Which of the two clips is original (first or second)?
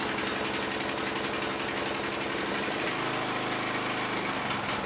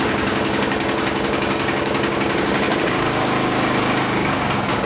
first